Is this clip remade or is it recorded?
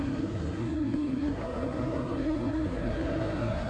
remade